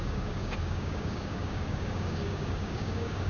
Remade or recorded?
remade